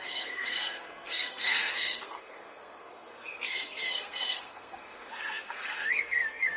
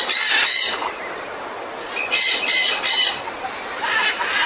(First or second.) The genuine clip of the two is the second